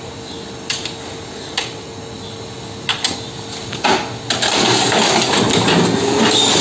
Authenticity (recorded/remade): recorded